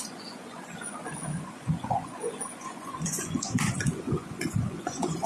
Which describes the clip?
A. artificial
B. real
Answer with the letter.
A